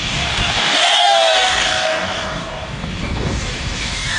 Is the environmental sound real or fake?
fake